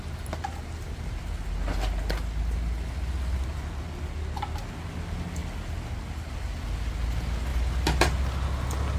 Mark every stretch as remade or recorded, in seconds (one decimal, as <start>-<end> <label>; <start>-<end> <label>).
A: 0.0-9.0 recorded